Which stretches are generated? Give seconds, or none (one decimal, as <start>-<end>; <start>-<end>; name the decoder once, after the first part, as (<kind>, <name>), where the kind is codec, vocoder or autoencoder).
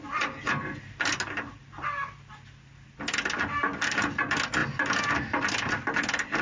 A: none